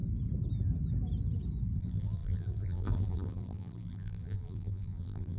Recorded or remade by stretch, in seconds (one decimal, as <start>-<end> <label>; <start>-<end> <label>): 0.0-1.8 recorded; 1.8-5.4 remade